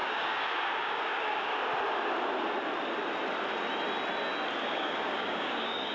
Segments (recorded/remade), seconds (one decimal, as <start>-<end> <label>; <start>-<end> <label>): 0.0-1.5 remade; 1.5-4.6 recorded; 4.6-5.9 remade